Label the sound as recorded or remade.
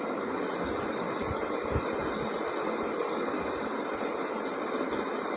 recorded